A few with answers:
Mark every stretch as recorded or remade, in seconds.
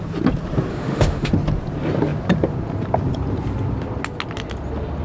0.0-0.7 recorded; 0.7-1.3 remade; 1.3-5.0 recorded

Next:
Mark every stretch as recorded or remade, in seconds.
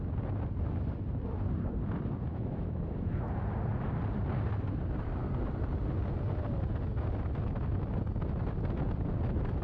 0.0-2.3 recorded; 2.3-3.3 remade; 3.3-9.6 recorded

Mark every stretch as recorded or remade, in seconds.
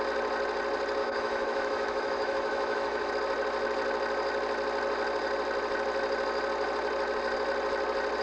0.0-1.0 recorded; 1.0-3.1 remade; 3.1-8.2 recorded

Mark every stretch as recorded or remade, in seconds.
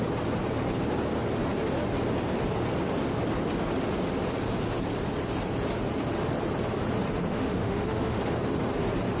0.0-7.3 recorded; 7.3-8.2 remade; 8.2-9.2 recorded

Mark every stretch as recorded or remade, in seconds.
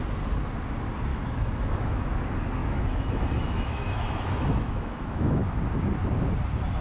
0.0-1.1 recorded; 1.1-2.2 remade; 2.2-2.6 recorded; 2.6-5.6 remade; 5.6-6.8 recorded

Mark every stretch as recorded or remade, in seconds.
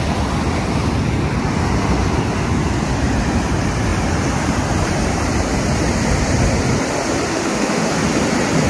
0.0-7.3 recorded; 7.3-7.9 remade; 7.9-8.7 recorded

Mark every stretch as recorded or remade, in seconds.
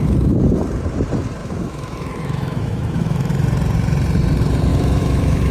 0.0-1.4 recorded; 1.4-3.3 remade; 3.3-4.7 recorded; 4.7-5.5 remade